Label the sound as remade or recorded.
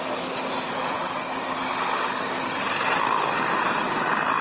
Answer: recorded